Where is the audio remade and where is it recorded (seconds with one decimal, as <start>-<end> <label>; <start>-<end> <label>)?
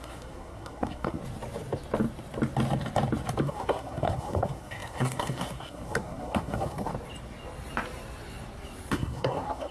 0.0-1.2 remade; 1.2-3.4 recorded; 3.4-6.9 remade; 6.9-8.9 recorded; 8.9-9.7 remade